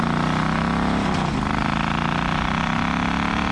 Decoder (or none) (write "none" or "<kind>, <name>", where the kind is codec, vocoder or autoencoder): none